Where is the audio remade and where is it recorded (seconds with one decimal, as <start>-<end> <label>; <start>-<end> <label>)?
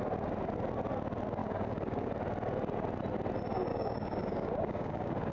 0.0-1.4 recorded; 1.4-2.1 remade; 2.1-3.7 recorded; 3.7-5.3 remade